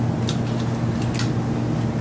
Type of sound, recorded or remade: recorded